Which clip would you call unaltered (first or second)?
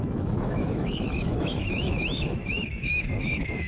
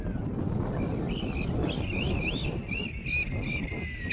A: second